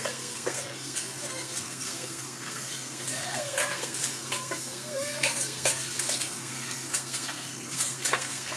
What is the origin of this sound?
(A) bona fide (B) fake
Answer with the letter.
B